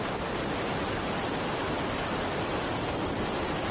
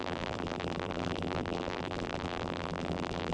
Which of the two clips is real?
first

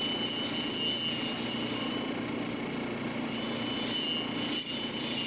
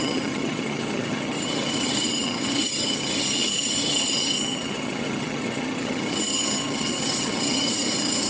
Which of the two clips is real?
first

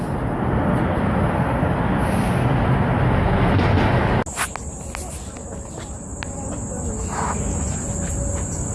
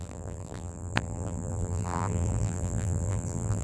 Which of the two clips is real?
first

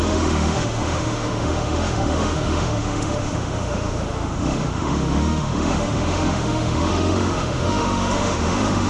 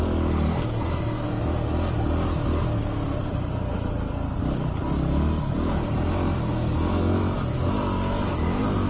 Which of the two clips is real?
second